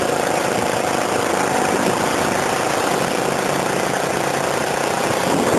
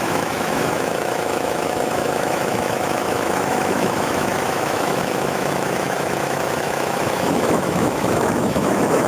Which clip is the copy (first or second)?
second